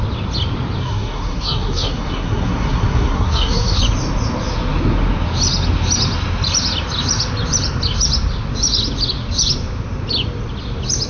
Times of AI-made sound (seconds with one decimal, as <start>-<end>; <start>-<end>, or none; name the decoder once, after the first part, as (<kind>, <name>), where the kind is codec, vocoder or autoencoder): 0.8-3.8 (codec, SNAC)